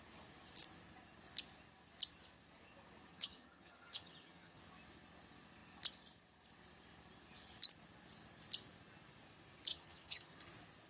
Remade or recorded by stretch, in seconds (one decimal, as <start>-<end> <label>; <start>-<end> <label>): 0.0-3.1 recorded; 3.1-4.6 remade; 4.6-9.7 recorded; 9.7-10.5 remade; 10.5-10.9 recorded